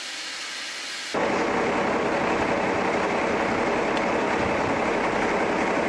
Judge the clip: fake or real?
real